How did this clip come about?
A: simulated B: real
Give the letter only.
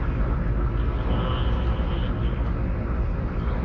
B